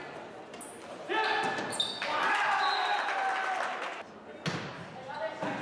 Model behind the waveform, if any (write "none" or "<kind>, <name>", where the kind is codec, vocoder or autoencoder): none